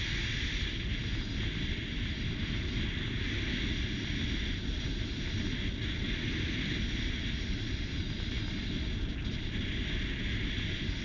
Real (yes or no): yes